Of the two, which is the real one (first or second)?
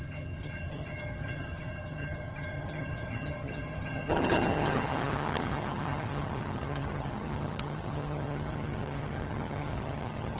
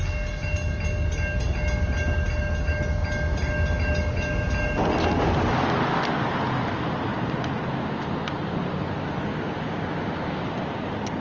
second